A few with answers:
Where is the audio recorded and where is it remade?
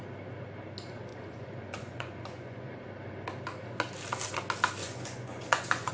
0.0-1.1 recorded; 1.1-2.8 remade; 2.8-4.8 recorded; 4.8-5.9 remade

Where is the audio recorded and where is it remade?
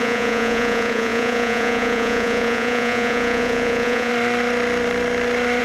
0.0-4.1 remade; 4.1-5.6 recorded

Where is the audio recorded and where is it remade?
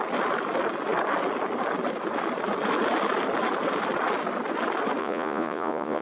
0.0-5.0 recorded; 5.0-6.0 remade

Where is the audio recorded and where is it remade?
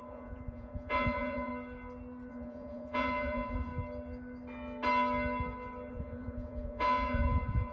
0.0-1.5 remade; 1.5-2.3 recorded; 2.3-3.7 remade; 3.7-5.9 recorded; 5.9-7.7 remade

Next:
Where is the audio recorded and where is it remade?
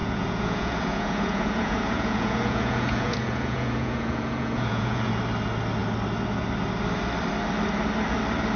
0.0-5.1 remade; 5.1-8.6 recorded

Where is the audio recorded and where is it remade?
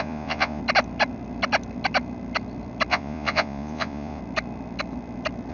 0.0-0.6 remade; 0.6-2.9 recorded; 2.9-4.2 remade; 4.2-5.5 recorded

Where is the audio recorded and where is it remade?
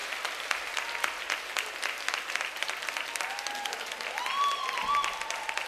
0.0-5.7 recorded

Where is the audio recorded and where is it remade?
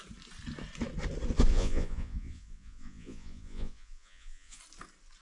0.0-1.5 recorded; 1.5-4.6 remade; 4.6-5.2 recorded